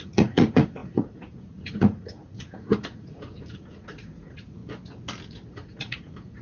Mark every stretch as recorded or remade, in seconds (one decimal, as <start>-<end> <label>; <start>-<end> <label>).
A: 0.0-4.6 remade; 4.6-5.5 recorded; 5.5-6.4 remade